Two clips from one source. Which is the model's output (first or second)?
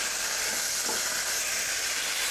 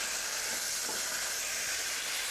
second